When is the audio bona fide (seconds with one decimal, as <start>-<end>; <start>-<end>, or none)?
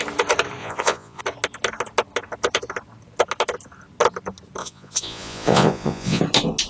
0.0-0.6; 1.2-4.6; 6.2-6.7